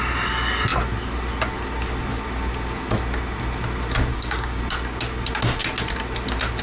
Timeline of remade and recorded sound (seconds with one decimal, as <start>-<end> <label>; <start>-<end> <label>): 0.0-4.1 recorded; 4.1-4.6 remade; 4.6-6.6 recorded